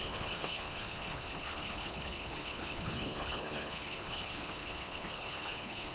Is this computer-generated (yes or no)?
yes